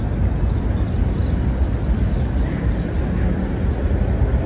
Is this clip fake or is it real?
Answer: real